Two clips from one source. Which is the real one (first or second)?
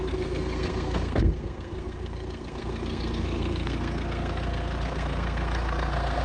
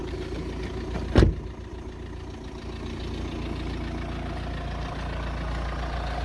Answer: second